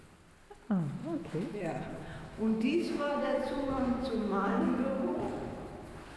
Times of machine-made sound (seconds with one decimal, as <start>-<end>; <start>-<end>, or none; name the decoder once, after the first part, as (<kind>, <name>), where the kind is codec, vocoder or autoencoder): 1.0-4.7 (autoencoder, DAC-VAE)